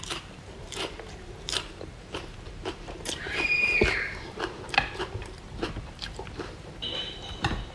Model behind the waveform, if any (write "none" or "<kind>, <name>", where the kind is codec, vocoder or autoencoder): vocoder, BigVGAN v2